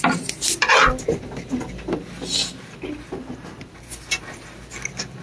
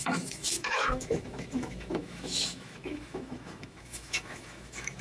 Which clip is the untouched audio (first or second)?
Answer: first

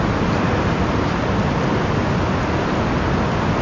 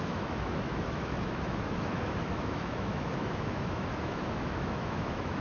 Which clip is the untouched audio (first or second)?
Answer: first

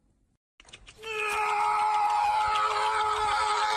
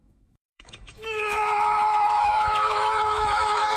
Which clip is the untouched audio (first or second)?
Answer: first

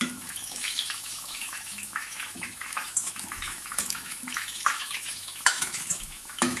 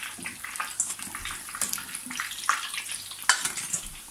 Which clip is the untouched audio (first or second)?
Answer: second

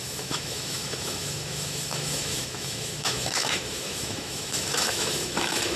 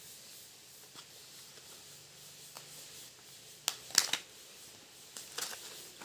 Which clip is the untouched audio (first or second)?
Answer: second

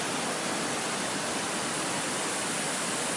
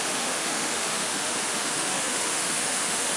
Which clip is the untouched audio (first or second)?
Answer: first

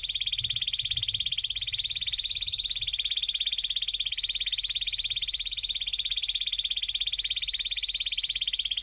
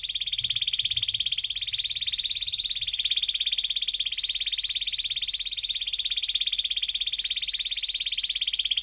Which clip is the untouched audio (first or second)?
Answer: second